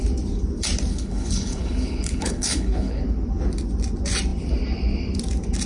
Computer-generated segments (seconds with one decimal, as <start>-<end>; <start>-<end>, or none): 0.9-3.0